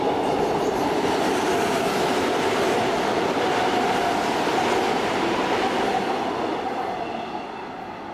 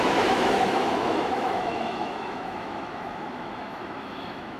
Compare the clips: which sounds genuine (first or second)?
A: first